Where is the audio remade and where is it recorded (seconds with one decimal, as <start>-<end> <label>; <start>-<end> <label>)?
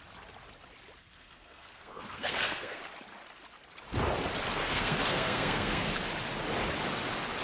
0.0-1.0 recorded; 1.0-2.8 remade; 2.8-4.6 recorded; 4.6-5.9 remade; 5.9-7.4 recorded